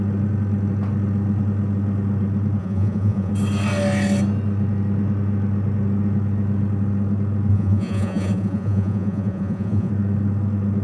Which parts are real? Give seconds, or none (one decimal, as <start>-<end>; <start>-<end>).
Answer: 0.0-2.6; 3.3-7.5; 9.9-10.8

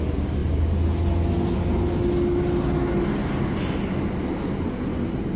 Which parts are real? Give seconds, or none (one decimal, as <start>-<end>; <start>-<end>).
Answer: 0.0-5.4

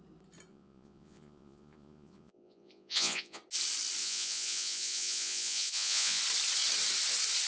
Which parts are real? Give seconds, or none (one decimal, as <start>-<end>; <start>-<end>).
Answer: 0.0-0.5; 3.4-4.0; 6.2-7.5

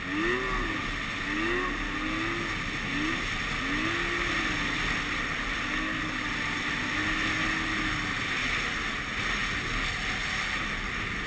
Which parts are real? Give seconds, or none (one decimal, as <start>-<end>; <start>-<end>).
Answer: 0.0-11.3

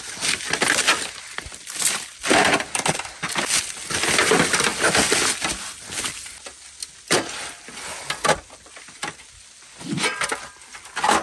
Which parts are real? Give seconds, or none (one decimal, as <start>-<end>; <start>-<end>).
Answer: 0.0-11.2

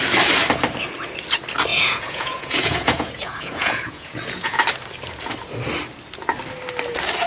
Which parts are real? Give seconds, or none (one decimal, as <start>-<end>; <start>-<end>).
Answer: 0.0-1.7; 4.6-7.3

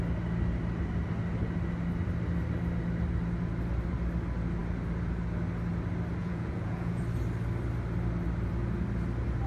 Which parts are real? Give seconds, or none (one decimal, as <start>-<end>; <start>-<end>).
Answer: 0.0-6.2; 7.0-9.5